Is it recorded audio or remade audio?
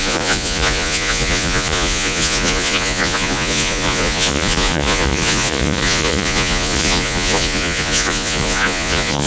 remade